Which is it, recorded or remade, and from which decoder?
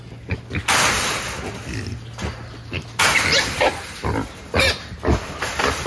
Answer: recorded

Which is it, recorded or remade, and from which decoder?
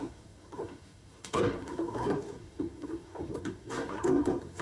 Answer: remade, codec, SNAC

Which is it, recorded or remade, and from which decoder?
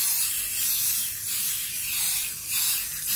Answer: recorded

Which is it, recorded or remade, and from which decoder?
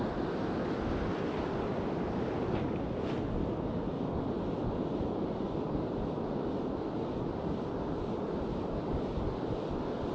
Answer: recorded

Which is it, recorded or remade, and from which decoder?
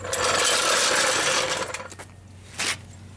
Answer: recorded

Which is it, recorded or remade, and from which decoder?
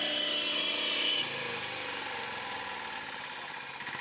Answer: recorded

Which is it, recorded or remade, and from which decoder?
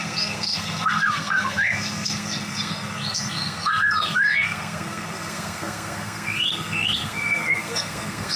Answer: remade, codec, SNAC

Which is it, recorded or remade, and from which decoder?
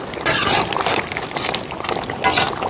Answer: recorded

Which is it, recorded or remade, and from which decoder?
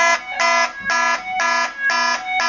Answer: recorded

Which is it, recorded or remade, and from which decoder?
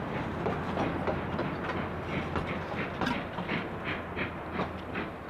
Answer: recorded